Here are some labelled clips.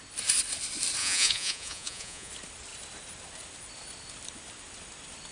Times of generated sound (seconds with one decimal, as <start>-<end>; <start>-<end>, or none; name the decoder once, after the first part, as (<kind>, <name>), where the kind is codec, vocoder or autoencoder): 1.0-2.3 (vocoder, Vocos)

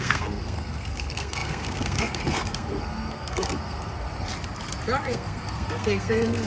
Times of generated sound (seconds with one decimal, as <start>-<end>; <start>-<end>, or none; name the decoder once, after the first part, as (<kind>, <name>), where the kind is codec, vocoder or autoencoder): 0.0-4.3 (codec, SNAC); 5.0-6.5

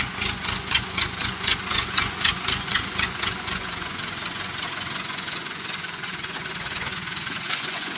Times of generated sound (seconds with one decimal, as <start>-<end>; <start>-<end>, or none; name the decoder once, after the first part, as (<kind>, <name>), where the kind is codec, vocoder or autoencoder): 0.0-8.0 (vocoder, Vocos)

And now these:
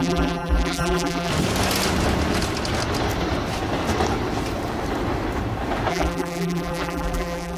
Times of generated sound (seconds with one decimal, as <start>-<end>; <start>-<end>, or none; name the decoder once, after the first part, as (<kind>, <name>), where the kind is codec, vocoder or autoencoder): 0.0-1.3 (vocoder, BigVGAN v2); 5.9-7.6

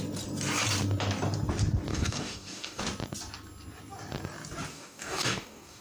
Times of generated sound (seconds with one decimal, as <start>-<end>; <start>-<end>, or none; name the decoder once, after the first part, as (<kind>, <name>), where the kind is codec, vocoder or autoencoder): 1.9-2.8 (codec, DAC); 4.7-5.8

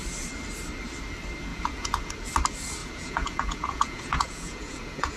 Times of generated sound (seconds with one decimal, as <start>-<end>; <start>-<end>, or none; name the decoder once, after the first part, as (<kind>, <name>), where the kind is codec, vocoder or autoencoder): 1.5-2.1 (vocoder, Vocos); 2.8-5.2

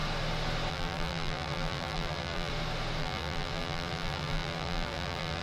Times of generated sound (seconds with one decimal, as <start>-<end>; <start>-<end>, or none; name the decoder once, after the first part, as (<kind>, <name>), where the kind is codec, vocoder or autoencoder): 0.7-2.5 (vocoder, BigVGAN v2); 3.0-5.4

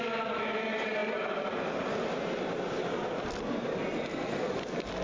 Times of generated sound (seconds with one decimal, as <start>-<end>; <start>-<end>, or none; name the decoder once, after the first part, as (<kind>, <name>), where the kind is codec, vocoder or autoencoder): none